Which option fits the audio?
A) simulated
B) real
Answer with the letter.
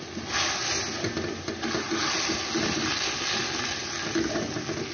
B